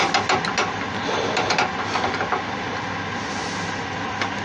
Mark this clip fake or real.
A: real